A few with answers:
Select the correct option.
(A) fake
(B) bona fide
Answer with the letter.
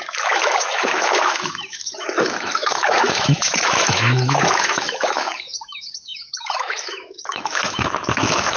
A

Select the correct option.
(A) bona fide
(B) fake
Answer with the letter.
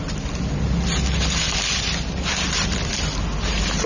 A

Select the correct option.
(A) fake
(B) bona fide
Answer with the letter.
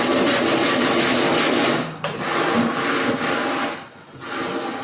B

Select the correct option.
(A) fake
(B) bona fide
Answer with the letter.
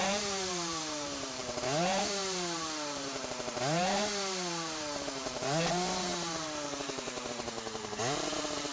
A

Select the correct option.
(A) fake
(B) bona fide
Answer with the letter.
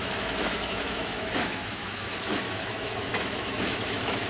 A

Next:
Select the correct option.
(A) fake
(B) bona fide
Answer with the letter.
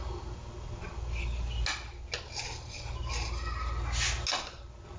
B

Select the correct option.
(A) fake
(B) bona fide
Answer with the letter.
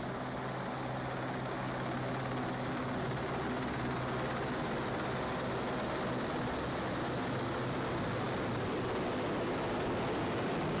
B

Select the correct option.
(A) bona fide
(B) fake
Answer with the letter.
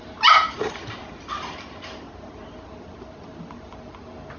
A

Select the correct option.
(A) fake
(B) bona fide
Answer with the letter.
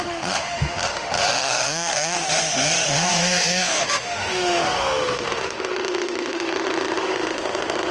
A